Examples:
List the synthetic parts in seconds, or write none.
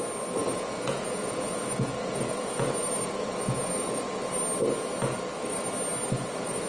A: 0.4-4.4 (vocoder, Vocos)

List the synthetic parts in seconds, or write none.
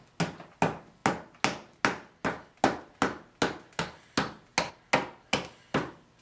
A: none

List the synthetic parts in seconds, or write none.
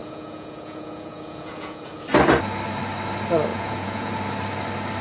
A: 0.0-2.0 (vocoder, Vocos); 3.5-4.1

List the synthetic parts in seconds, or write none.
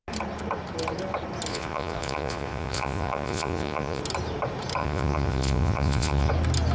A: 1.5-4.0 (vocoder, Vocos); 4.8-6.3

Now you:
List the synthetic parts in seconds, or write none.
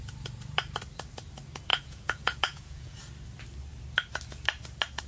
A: 1.7-3.0 (vocoder, Vocos)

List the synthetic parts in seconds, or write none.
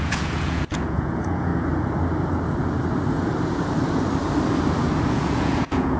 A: 0.0-1.5 (vocoder, Vocos); 5.1-6.0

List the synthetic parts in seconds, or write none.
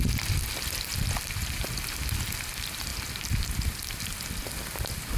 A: none